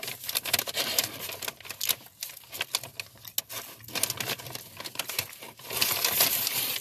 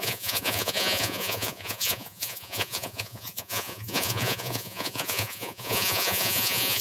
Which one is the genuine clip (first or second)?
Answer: first